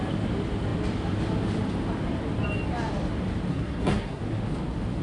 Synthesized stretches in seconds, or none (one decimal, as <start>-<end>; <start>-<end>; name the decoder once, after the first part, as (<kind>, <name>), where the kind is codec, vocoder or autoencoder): 3.5-4.2 (codec, SNAC)